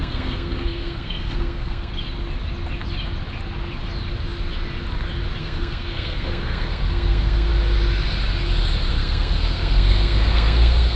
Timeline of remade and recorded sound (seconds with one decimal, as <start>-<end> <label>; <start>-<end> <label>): 0.0-1.9 remade; 1.9-5.4 recorded; 5.4-7.5 remade; 7.5-8.9 recorded; 8.9-11.0 remade